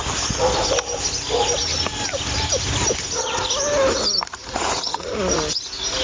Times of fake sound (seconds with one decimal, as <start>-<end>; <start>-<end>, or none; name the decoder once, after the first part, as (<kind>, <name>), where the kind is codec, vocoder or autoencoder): 4.4-5.1 (vocoder, Vocos)